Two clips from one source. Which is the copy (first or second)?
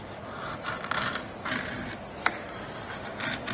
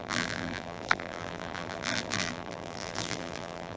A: second